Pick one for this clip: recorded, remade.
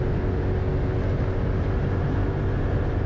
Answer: recorded